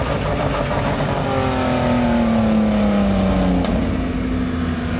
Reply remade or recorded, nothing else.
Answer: recorded